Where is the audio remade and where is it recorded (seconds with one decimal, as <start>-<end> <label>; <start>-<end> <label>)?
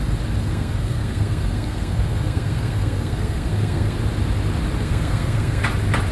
0.0-0.4 recorded; 0.4-4.0 remade; 4.0-4.8 recorded; 4.8-5.6 remade; 5.6-6.1 recorded